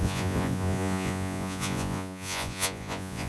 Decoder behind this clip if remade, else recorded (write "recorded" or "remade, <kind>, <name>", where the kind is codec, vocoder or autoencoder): remade, vocoder, Vocos